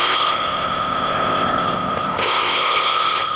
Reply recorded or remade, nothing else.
remade